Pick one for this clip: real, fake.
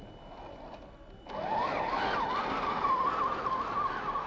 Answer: real